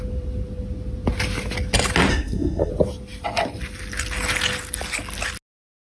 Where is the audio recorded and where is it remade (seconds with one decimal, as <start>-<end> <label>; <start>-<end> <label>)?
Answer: 0.0-2.1 recorded; 2.1-2.7 remade; 2.7-5.9 recorded